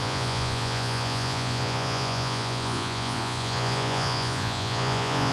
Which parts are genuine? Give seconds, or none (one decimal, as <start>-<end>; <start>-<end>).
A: none